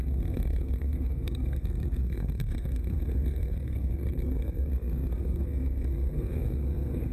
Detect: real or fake fake